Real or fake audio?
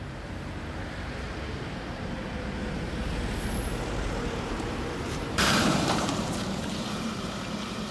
fake